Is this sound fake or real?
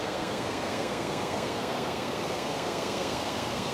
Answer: fake